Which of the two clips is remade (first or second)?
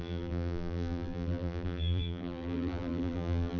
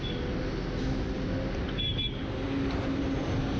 first